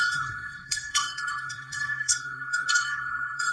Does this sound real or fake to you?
fake